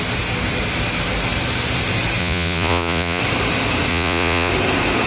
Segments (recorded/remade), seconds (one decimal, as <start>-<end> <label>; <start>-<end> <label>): 0.0-2.2 recorded; 2.2-3.2 remade; 3.2-3.9 recorded; 3.9-4.5 remade; 4.5-5.1 recorded